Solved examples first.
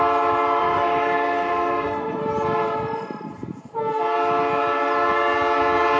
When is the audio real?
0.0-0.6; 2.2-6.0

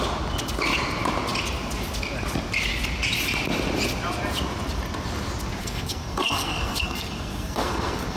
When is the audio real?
0.0-5.6

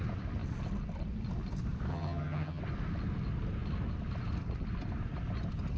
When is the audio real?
0.0-1.9; 2.6-5.8